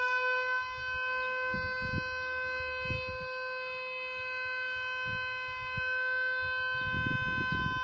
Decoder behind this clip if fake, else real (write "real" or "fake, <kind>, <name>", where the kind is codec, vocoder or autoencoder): real